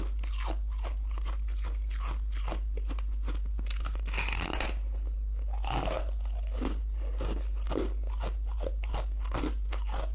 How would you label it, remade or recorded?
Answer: recorded